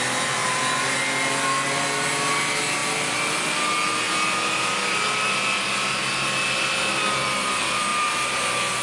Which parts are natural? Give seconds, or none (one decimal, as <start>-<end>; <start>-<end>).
0.0-7.9; 8.4-8.8